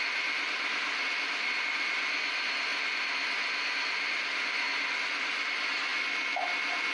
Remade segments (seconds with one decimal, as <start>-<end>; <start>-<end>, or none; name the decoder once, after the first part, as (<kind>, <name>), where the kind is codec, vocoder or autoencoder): none